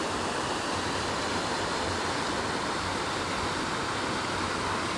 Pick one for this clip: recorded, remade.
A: recorded